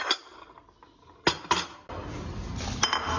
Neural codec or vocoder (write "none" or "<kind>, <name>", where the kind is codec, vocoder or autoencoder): none